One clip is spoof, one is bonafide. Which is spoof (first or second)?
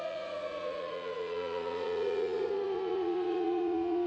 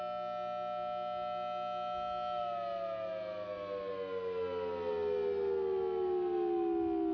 first